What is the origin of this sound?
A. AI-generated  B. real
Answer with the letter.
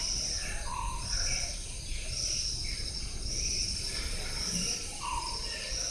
B